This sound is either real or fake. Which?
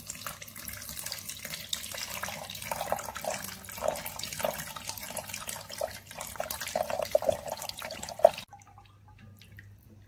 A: real